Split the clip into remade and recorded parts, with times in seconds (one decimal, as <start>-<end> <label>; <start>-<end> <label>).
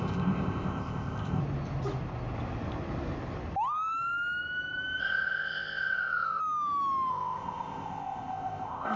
0.0-1.4 remade; 1.4-5.0 recorded; 5.0-6.4 remade; 6.4-7.1 recorded; 7.1-9.0 remade